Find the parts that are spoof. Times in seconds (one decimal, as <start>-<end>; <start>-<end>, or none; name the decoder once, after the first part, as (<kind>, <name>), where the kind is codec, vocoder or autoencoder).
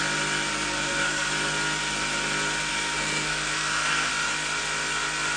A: 0.5-1.3 (codec, SNAC); 2.7-4.1